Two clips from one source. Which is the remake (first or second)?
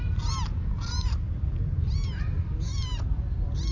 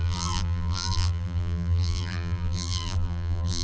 second